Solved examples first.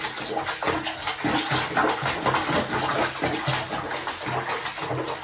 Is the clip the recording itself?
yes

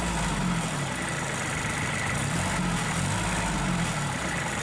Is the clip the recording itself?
yes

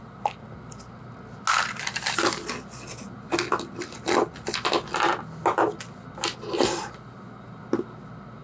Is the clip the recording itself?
yes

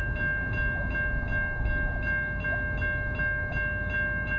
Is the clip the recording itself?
yes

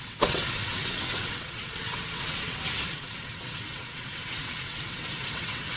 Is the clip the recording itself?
no